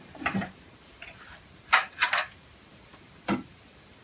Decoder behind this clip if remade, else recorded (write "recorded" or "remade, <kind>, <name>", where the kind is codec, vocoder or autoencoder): remade, vocoder, BigVGAN v2